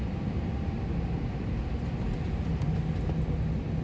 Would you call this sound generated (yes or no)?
no